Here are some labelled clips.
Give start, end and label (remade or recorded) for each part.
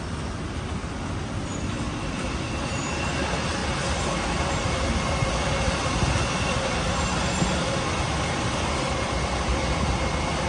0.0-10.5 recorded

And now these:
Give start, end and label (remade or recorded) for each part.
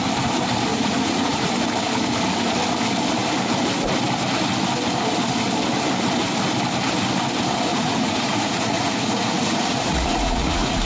0.0-0.7 recorded; 0.7-1.5 remade; 1.5-7.7 recorded; 7.7-10.8 remade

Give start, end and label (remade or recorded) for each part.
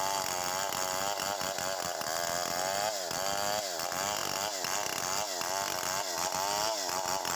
0.0-7.4 recorded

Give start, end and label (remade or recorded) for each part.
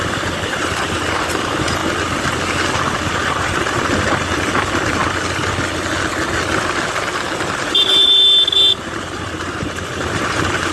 0.0-1.8 remade; 1.8-2.9 recorded; 2.9-5.0 remade; 5.0-7.6 recorded; 7.6-10.7 remade